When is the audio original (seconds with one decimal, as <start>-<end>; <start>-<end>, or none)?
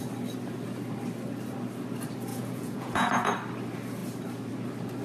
0.0-2.3; 3.3-5.0